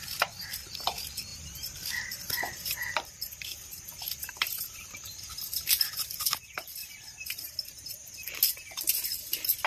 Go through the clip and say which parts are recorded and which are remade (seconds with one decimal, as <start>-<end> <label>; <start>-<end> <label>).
0.0-1.3 recorded; 1.3-5.8 remade; 5.8-6.8 recorded; 6.8-7.9 remade; 7.9-9.7 recorded